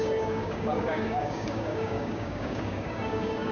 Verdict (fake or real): fake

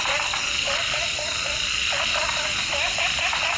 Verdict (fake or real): real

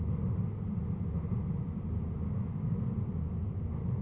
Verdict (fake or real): real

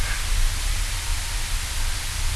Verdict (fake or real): real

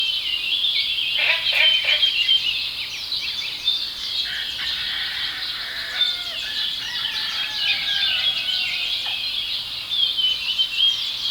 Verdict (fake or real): real